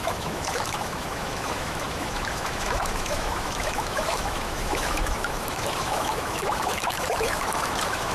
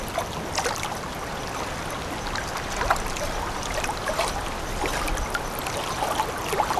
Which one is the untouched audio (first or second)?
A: second